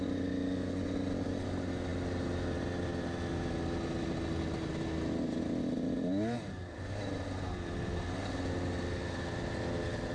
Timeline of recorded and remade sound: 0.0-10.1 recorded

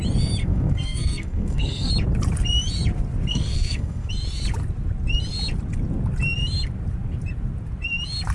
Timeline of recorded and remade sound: 0.0-0.4 recorded; 0.4-1.9 remade; 1.9-3.3 recorded; 3.3-4.1 remade; 4.1-8.3 recorded

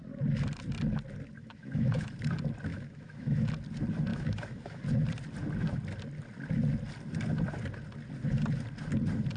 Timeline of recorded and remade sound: 0.0-1.4 recorded; 1.4-2.1 remade; 2.1-2.7 recorded; 2.7-3.5 remade; 3.5-4.1 recorded; 4.1-4.8 remade; 4.8-9.4 recorded

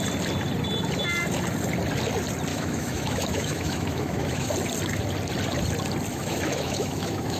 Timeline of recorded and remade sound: 0.0-2.5 recorded; 2.5-4.5 remade; 4.5-6.1 recorded; 6.1-7.4 remade

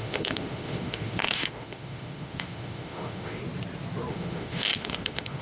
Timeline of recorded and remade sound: 0.0-3.4 remade; 3.4-4.1 recorded; 4.1-5.4 remade